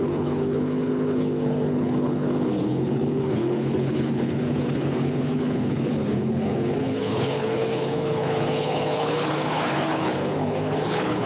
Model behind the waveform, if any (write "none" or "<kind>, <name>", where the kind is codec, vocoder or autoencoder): codec, HILCodec